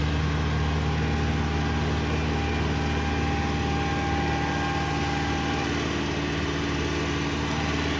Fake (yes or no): no